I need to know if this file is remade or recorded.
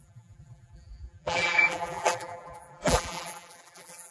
remade